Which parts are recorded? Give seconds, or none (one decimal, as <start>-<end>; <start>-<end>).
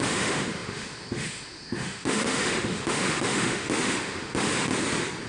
4.7-5.3